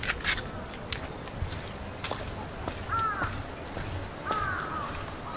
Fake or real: real